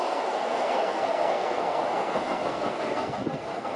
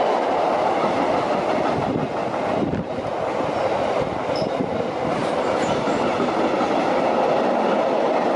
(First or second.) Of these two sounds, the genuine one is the second